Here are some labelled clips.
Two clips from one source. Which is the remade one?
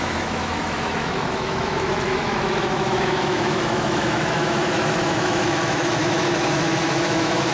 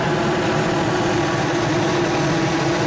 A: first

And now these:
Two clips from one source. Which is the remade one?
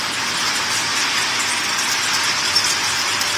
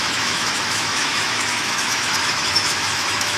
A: second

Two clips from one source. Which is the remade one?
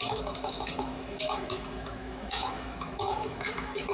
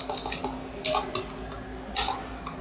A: first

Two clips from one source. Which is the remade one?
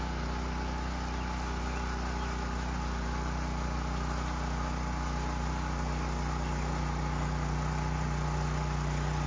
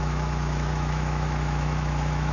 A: second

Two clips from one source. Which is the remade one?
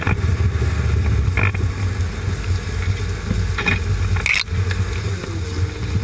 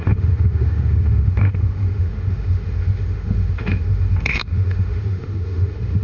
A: second